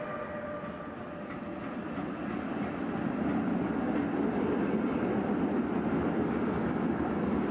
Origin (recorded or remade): recorded